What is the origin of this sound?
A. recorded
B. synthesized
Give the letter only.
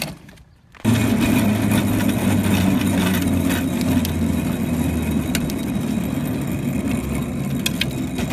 A